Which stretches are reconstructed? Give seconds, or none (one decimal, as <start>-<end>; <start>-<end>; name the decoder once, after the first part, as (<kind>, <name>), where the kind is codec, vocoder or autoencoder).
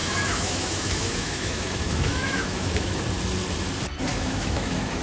0.0-3.0 (autoencoder, DAC-VAE); 4.1-5.0